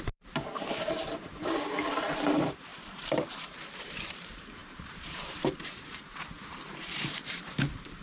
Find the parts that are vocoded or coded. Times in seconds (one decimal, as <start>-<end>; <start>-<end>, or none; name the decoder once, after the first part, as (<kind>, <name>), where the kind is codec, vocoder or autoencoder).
0.0-8.0 (vocoder, BigVGAN v2)